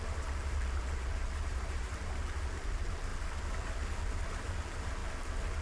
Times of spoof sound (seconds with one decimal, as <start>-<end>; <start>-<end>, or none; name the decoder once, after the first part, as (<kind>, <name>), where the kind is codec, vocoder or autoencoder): 0.0-3.1 (vocoder, BigVGAN v2); 4.1-5.0